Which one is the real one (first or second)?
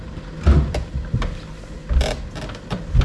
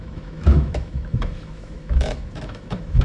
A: first